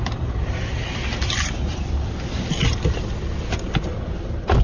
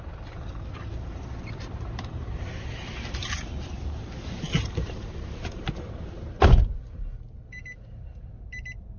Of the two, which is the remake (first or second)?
second